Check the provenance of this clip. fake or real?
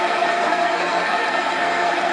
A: fake